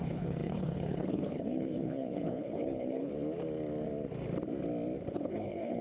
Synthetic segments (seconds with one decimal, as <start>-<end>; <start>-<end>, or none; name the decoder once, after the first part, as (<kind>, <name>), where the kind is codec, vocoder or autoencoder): 0.0-3.1 (codec, HILCodec); 5.1-5.8